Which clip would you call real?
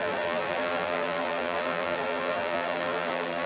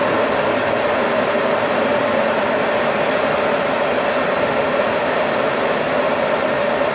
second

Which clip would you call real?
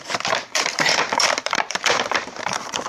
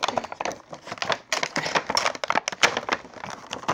second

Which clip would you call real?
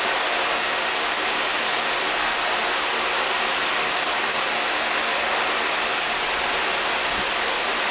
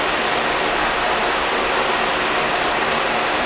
first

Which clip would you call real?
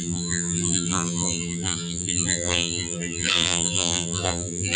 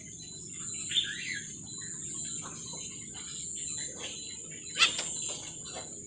second